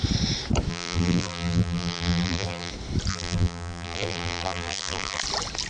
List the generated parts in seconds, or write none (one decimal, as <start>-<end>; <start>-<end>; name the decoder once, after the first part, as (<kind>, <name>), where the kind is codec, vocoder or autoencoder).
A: 0.7-2.7 (vocoder, BigVGAN v2); 3.1-5.2